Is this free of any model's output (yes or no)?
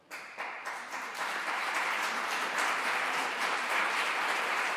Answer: no